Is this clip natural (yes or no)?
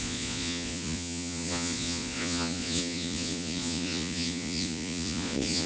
no